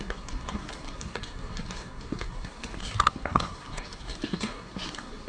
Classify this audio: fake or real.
fake